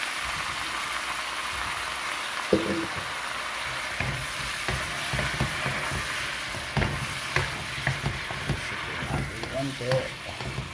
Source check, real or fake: real